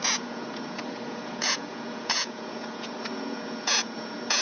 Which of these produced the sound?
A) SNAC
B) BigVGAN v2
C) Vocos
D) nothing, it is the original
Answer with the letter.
C